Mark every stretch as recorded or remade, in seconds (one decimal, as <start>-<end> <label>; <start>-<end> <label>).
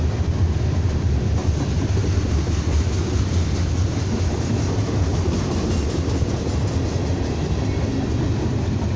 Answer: 0.0-9.0 recorded